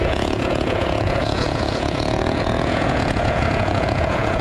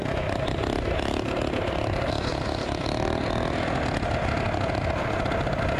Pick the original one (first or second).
second